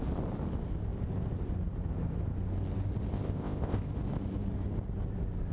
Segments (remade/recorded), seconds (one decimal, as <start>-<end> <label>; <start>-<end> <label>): 0.0-3.1 recorded; 3.1-3.9 remade; 3.9-5.5 recorded